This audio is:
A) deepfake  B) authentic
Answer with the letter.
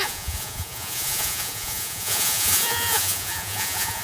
A